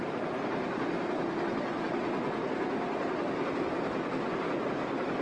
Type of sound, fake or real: real